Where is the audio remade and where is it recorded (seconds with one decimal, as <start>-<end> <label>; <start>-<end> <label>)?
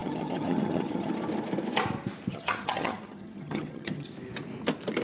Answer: 0.0-1.1 remade; 1.1-2.3 recorded; 2.3-4.1 remade; 4.1-5.0 recorded